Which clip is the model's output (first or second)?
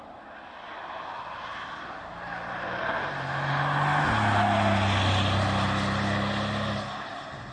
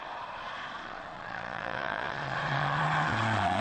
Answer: second